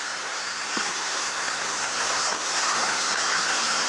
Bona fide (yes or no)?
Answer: no